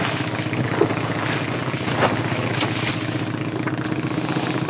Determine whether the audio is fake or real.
real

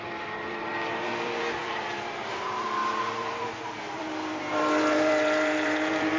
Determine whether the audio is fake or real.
fake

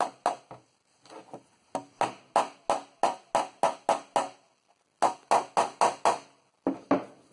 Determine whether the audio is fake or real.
real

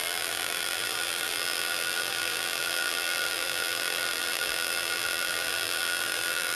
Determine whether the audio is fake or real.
fake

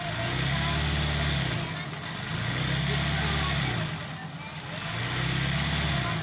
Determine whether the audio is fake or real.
real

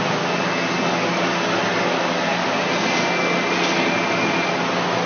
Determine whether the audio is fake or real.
real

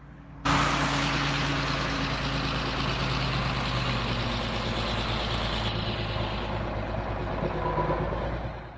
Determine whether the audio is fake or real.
real